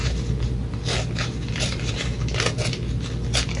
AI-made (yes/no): no